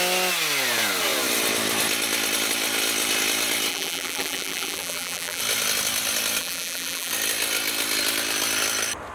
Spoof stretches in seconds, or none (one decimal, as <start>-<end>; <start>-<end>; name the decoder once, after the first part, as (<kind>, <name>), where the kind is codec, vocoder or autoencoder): 3.7-5.4 (vocoder, BigVGAN v2); 6.4-7.1